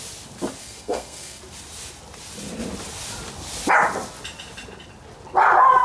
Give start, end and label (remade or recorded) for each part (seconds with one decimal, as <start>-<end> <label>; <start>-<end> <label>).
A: 0.0-0.6 recorded; 0.6-1.4 remade; 1.4-5.8 recorded